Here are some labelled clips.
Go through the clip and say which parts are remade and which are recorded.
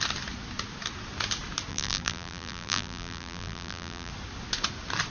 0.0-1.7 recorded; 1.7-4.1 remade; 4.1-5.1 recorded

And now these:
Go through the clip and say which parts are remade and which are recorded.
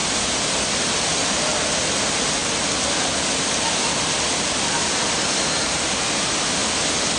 0.0-7.2 recorded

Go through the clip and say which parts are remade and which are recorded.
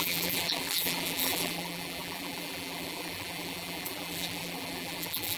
0.0-5.4 remade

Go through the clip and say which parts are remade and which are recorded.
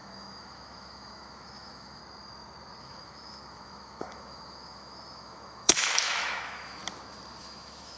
0.0-2.0 remade; 2.0-2.8 recorded; 2.8-6.8 remade; 6.8-7.4 recorded; 7.4-8.0 remade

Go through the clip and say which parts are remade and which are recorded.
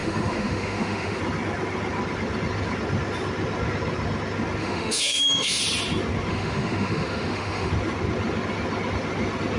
0.0-1.2 remade; 1.2-4.6 recorded; 4.6-5.6 remade; 5.6-6.3 recorded; 6.3-7.7 remade; 7.7-9.6 recorded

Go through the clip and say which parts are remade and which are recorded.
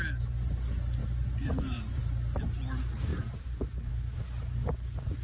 0.0-1.0 recorded; 1.0-2.0 remade; 2.0-3.1 recorded; 3.1-3.9 remade; 3.9-5.2 recorded